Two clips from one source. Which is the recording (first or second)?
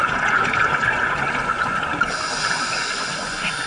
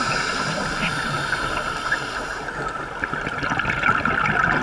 second